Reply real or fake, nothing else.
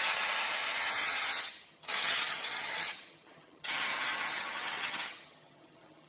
fake